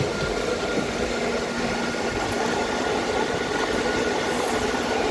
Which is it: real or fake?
real